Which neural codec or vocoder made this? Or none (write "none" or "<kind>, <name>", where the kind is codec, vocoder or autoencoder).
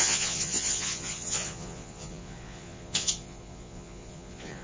vocoder, Vocos